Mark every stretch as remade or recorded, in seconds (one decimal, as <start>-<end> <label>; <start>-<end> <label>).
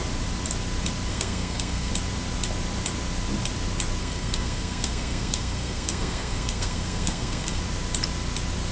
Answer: 0.0-1.1 recorded; 1.1-1.9 remade; 1.9-4.0 recorded; 4.0-7.6 remade; 7.6-8.7 recorded